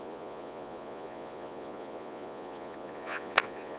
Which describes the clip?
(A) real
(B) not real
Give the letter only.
B